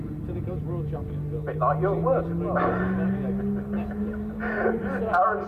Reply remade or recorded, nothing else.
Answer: recorded